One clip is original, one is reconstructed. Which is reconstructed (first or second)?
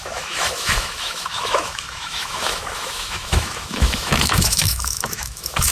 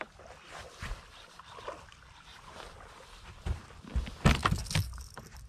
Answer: first